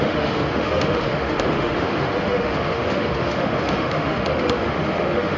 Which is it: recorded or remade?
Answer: remade